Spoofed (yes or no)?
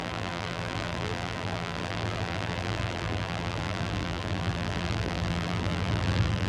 yes